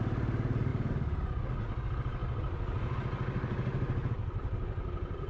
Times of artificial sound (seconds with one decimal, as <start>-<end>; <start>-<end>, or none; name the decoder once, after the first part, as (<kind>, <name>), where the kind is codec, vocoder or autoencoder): none